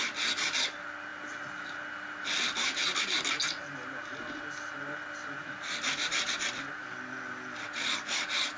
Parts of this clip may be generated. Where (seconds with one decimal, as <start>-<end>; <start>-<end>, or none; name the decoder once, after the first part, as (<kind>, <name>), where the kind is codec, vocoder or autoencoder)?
none